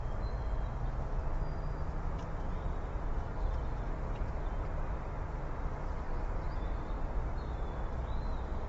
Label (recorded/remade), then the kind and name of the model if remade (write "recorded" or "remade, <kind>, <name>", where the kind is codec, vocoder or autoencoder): recorded